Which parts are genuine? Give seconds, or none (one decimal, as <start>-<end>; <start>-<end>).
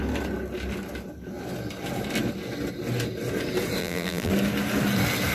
0.0-3.8; 4.3-5.3